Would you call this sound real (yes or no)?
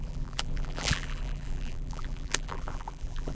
no